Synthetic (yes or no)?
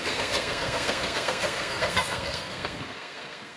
yes